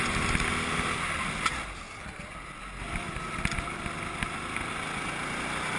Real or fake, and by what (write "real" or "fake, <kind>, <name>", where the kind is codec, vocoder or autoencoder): real